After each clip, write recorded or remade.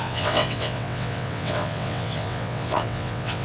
remade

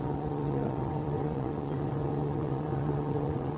remade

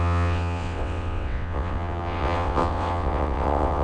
remade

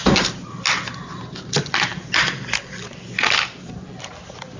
recorded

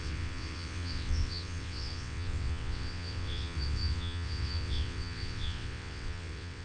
remade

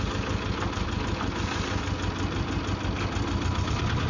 recorded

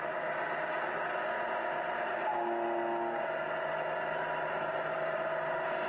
recorded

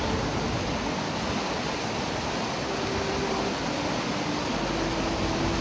recorded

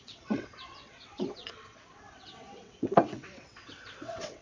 remade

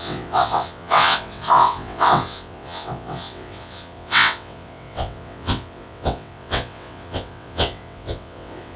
remade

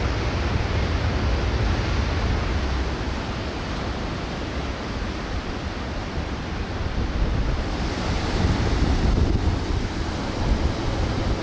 recorded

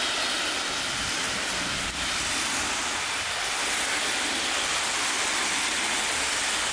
recorded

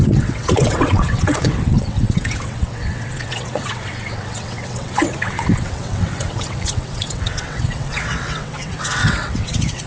remade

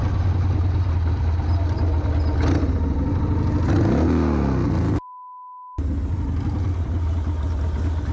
recorded